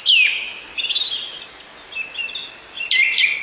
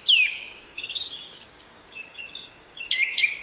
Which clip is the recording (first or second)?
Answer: first